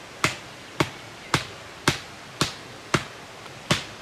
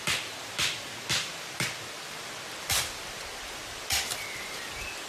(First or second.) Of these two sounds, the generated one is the second